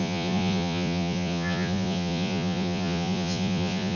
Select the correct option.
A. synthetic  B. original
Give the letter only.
A